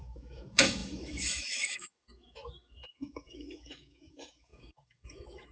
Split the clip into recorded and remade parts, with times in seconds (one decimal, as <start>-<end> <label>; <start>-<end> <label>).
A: 0.0-5.5 remade